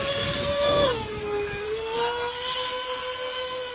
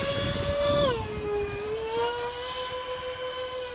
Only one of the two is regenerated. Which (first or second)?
first